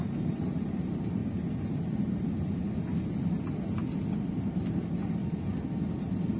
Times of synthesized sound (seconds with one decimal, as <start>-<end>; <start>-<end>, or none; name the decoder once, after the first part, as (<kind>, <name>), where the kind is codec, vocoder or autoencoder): 0.0-1.2 (vocoder, BigVGAN v2); 1.7-2.6; 4.2-5.2; 5.9-6.4